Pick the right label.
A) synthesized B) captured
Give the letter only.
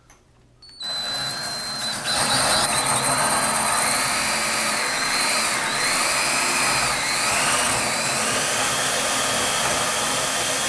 B